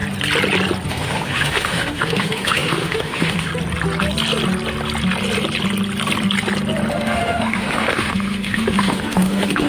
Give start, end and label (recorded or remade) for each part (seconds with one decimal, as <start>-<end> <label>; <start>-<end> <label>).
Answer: 0.0-0.9 recorded; 0.9-3.5 remade; 3.5-6.9 recorded; 6.9-9.7 remade